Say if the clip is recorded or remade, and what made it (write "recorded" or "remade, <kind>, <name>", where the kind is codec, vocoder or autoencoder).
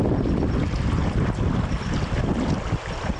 recorded